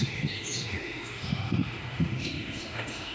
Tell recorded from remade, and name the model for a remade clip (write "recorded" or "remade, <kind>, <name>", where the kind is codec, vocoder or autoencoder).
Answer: remade, autoencoder, DAC-VAE